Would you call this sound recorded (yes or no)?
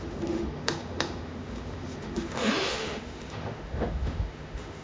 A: no